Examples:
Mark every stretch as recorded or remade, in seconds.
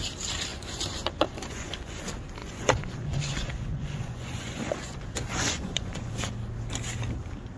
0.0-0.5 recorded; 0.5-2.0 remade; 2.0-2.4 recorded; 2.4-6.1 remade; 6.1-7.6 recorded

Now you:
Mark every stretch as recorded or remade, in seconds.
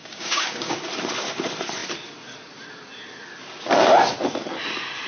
0.0-0.8 remade; 0.8-5.1 recorded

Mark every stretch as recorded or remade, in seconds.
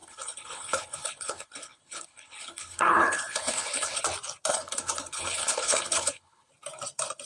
0.0-4.0 remade; 4.0-4.5 recorded; 4.5-6.5 remade; 6.5-7.3 recorded